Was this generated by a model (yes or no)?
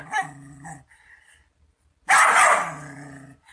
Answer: no